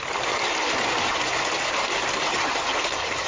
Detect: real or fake real